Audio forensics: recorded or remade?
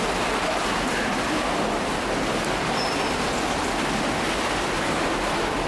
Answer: recorded